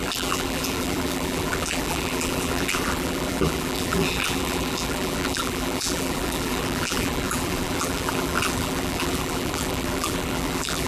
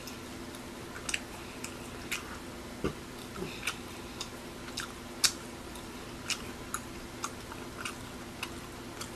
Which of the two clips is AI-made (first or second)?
first